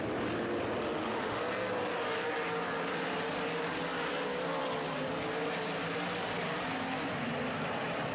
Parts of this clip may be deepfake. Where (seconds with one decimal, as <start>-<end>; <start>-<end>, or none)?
0.8-1.4